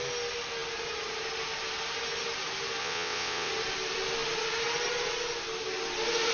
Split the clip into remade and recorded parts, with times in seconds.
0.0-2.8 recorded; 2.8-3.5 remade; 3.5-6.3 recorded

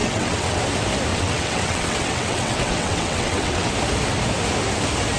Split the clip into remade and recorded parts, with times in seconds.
0.0-0.6 remade; 0.6-1.1 recorded; 1.1-3.7 remade; 3.7-5.2 recorded

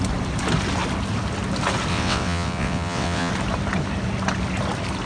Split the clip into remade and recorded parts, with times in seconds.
0.0-1.9 recorded; 1.9-3.3 remade; 3.3-5.1 recorded